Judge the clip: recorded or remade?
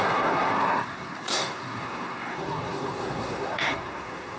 remade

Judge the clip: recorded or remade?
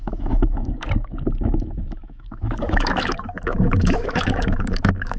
remade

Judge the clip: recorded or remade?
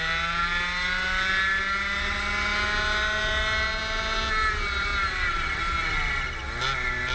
recorded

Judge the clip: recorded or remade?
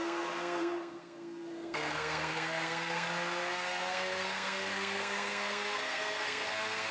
remade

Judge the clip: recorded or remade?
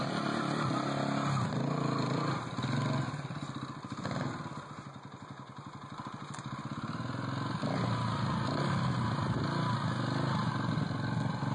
recorded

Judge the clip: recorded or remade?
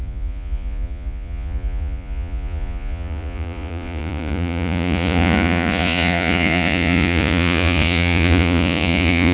remade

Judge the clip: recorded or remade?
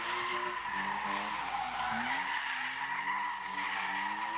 recorded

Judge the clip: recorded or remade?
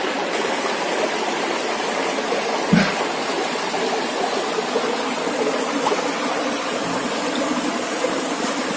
recorded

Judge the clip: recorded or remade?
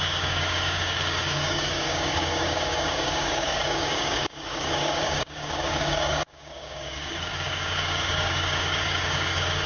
remade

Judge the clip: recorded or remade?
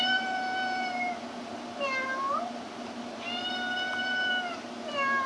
recorded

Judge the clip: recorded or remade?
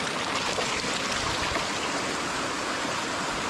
recorded